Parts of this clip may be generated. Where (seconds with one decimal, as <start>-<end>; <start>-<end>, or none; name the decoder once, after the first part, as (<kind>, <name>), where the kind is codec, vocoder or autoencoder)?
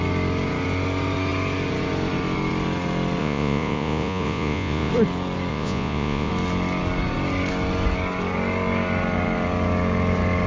3.2-4.9 (vocoder, Vocos); 5.5-6.3